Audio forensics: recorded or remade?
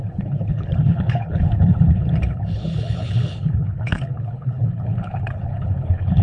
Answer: remade